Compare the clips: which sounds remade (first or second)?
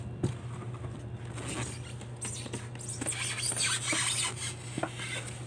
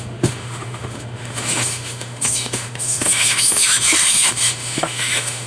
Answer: second